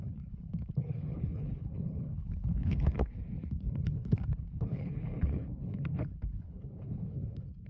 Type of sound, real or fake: fake